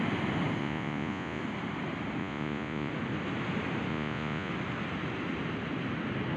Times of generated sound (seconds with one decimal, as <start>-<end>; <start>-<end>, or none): 0.6-1.4; 2.2-2.9; 3.9-4.5